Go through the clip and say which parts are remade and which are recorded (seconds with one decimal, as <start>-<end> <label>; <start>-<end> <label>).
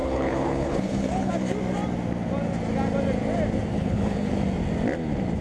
0.0-1.3 remade; 1.3-3.7 recorded; 3.7-4.3 remade; 4.3-5.4 recorded